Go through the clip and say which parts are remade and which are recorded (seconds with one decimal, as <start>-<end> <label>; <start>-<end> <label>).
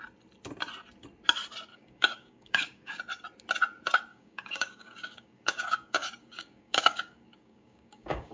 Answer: 0.0-1.7 recorded; 1.7-3.0 remade; 3.0-4.1 recorded; 4.1-8.3 remade